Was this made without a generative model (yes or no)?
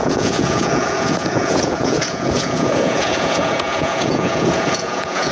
no